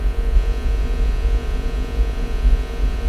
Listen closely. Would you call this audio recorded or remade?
remade